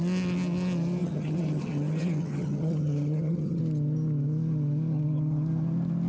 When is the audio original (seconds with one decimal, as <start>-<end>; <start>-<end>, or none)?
0.0-1.0; 3.6-6.1